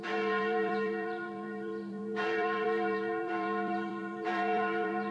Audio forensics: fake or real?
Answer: fake